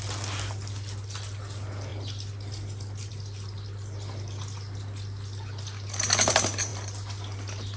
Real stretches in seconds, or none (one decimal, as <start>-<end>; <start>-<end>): 0.0-7.8